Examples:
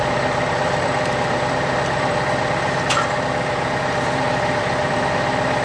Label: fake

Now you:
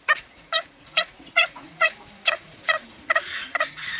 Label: fake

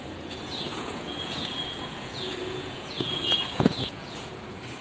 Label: fake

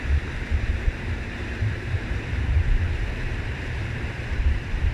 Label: fake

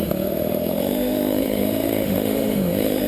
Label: fake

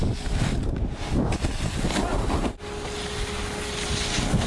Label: real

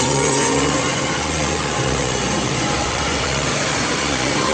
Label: fake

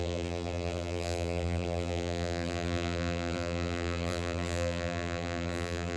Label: fake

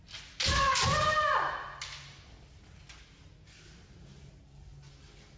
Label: real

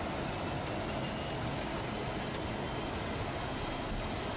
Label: real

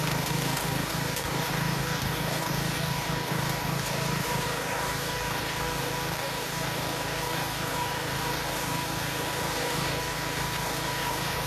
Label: fake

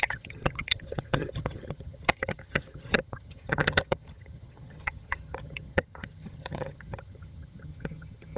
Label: fake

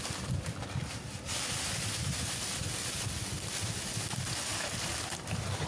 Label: real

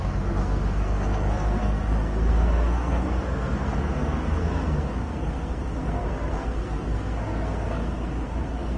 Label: fake